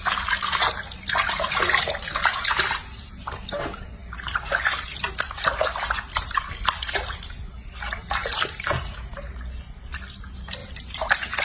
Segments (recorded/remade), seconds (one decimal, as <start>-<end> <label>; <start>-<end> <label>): 0.0-11.4 recorded